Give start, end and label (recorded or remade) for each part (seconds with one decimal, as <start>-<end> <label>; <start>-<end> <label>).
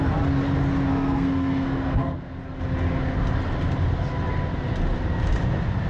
0.0-0.9 recorded; 0.9-2.3 remade; 2.3-5.9 recorded